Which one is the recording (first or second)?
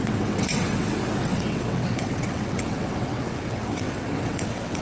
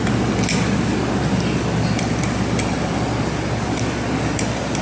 second